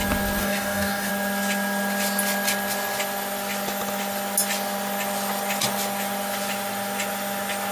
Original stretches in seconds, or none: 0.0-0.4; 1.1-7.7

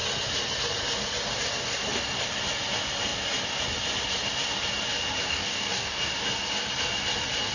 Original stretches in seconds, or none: 0.0-5.2; 6.1-7.5

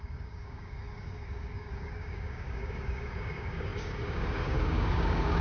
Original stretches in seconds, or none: none

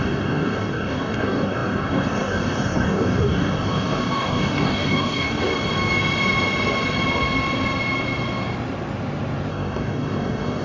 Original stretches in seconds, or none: 5.5-9.5

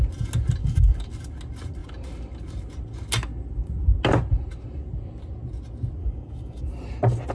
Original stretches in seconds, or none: 0.0-0.6; 1.1-6.0; 6.6-7.3

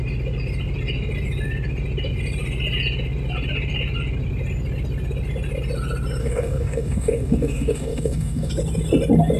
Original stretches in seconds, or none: 0.0-6.2; 8.5-9.4

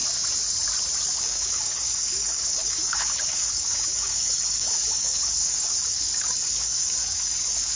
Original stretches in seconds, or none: 0.0-1.1